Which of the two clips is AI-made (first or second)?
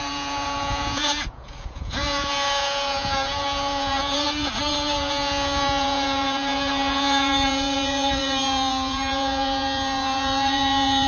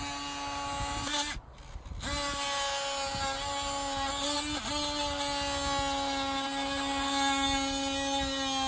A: first